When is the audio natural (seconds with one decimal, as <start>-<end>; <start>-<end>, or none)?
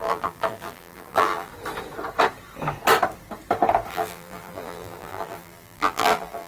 1.5-3.9